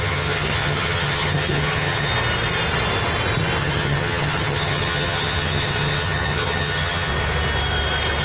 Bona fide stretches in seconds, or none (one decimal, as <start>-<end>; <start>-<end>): 2.1-3.6; 7.1-8.2